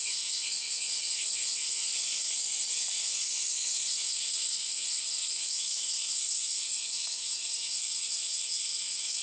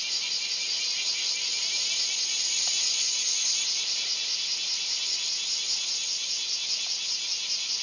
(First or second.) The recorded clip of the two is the second